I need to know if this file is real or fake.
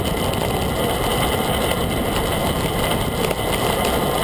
real